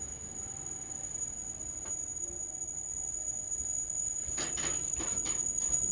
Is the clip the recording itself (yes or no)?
yes